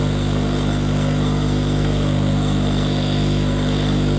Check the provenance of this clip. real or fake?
fake